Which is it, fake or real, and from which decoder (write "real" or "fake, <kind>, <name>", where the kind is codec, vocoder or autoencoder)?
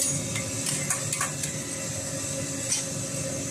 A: real